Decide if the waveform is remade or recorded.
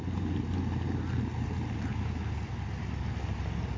recorded